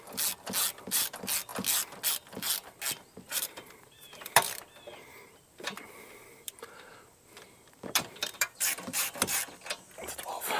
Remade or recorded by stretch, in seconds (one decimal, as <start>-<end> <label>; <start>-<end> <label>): 0.0-3.3 recorded; 3.3-4.6 remade; 4.6-5.1 recorded; 5.1-9.4 remade; 9.4-10.6 recorded